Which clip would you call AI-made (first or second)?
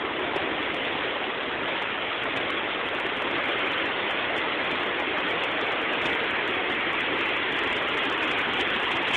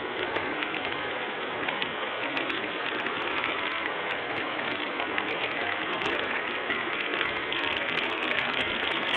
second